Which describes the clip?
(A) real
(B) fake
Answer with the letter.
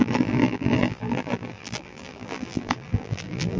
B